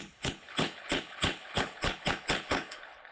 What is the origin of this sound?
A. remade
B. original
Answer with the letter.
A